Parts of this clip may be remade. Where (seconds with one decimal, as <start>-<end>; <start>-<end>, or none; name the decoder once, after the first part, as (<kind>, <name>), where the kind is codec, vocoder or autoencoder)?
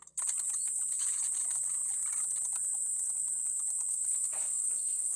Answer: 3.9-5.2 (codec, HILCodec)